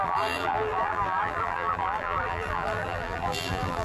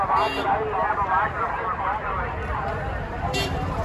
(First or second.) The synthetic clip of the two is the first